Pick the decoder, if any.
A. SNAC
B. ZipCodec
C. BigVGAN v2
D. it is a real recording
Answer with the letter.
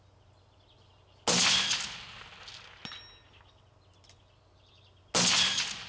D